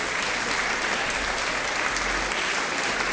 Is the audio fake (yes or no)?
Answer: no